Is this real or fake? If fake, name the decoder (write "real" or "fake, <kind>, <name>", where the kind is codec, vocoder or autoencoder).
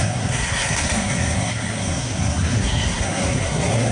fake, codec, SNAC